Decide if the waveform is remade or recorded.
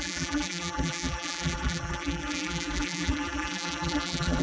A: remade